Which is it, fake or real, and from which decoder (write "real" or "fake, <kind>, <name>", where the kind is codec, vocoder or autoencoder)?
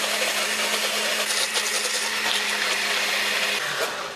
real